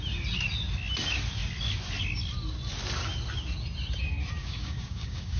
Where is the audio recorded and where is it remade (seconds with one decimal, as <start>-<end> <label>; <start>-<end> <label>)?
0.0-4.4 recorded; 4.4-5.4 remade